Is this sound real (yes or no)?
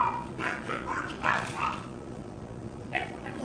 no